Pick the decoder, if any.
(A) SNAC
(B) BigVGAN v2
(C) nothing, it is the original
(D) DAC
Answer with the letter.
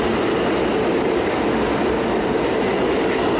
C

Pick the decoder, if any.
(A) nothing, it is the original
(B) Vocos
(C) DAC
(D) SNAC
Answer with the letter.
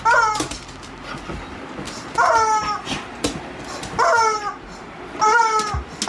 A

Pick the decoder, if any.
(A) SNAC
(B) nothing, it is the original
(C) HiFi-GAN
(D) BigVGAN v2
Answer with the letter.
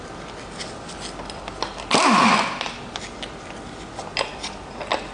B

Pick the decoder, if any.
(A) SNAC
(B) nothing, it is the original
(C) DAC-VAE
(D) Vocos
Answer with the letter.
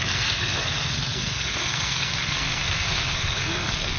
A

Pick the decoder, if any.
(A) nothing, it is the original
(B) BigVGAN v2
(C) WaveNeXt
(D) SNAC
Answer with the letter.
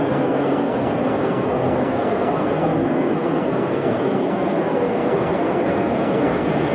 D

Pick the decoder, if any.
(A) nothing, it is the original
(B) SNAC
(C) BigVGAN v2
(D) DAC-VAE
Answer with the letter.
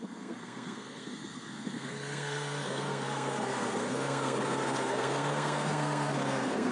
B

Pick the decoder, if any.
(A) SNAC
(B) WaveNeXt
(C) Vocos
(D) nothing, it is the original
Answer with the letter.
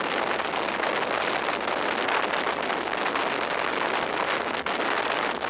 D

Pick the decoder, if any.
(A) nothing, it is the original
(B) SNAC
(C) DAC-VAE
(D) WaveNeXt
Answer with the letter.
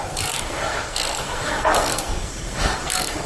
B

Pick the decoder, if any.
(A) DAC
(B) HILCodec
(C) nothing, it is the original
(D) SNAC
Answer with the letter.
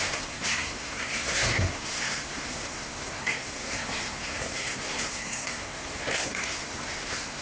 D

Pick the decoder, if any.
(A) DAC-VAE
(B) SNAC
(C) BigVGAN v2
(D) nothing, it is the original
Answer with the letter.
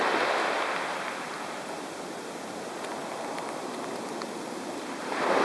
D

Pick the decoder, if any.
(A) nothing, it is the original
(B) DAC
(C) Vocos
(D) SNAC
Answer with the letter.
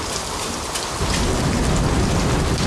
A